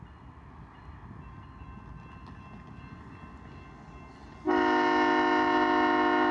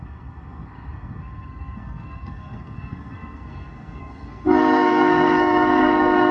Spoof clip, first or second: second